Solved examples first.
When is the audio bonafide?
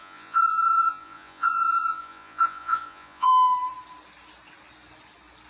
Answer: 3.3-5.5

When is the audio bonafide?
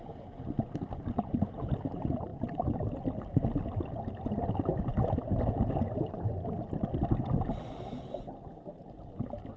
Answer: 0.0-9.6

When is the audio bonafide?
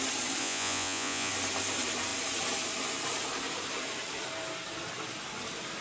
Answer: 0.0-0.4; 1.3-5.8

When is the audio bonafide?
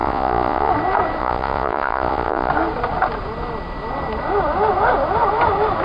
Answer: 0.7-1.2; 2.5-5.8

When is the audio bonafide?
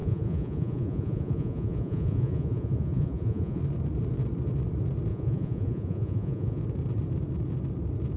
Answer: 3.6-5.1; 6.6-8.2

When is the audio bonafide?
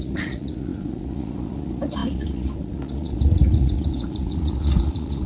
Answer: none